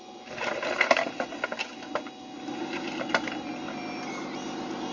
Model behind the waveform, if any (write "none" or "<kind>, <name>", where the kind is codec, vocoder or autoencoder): none